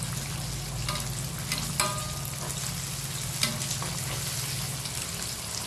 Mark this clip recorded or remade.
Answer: recorded